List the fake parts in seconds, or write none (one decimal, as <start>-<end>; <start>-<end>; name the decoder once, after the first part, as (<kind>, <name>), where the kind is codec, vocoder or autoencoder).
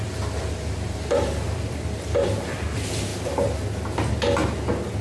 0.0-3.1 (vocoder, BigVGAN v2)